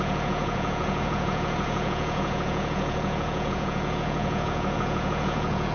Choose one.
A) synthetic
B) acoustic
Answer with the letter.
A